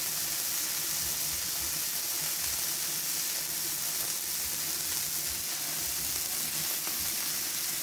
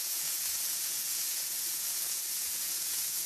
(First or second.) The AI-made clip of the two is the second